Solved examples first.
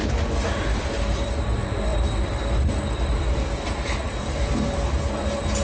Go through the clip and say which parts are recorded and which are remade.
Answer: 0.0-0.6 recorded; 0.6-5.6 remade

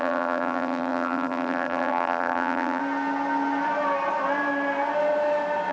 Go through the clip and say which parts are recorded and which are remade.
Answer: 0.0-2.8 remade; 2.8-5.7 recorded

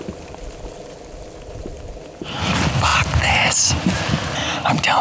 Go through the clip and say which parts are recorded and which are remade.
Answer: 0.0-5.0 recorded

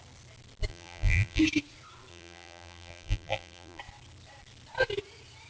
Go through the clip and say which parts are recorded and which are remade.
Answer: 0.0-0.7 recorded; 0.7-1.4 remade; 1.4-2.1 recorded; 2.1-3.8 remade; 3.8-5.5 recorded

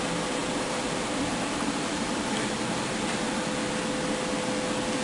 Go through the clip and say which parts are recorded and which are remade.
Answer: 0.0-0.4 recorded; 0.4-3.4 remade; 3.4-5.0 recorded

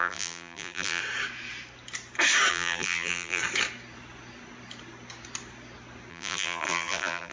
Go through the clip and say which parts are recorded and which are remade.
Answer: 0.0-1.0 remade; 1.0-2.5 recorded; 2.5-3.4 remade; 3.4-6.1 recorded; 6.1-7.3 remade

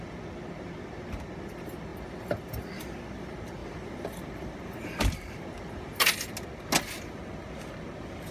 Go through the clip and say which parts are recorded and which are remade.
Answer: 0.0-3.6 recorded; 3.6-6.0 remade; 6.0-8.3 recorded

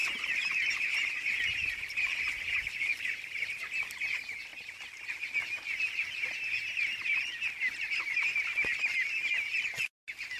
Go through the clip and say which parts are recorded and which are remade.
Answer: 0.0-3.5 remade; 3.5-4.5 recorded; 4.5-5.0 remade; 5.0-10.4 recorded